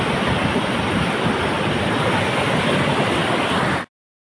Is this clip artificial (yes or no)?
no